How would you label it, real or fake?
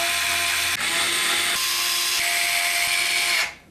real